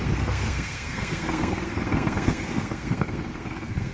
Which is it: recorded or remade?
remade